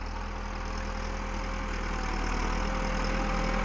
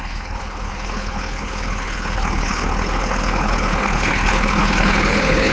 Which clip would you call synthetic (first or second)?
second